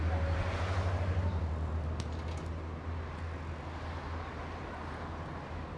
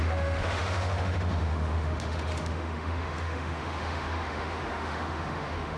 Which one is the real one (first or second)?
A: first